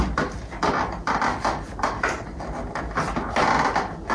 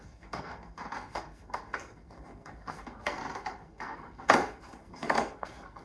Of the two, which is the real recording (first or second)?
first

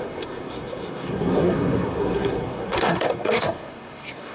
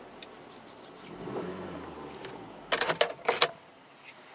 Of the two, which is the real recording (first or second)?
second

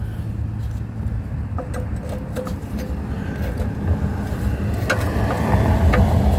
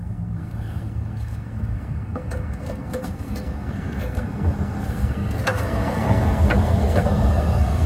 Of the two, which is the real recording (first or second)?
first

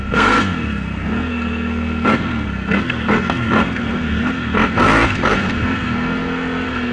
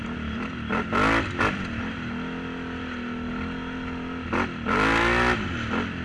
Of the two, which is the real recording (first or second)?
second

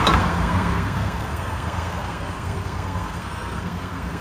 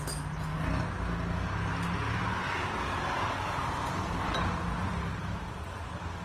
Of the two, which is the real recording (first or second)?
second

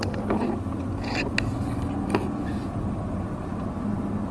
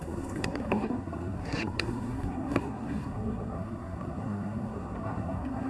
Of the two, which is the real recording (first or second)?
first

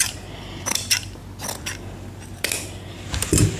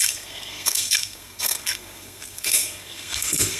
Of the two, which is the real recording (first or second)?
first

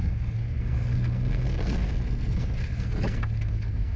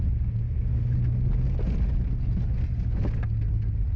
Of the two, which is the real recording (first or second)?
second